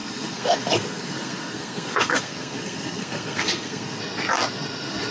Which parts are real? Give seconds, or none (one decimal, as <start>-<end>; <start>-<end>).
4.0-5.1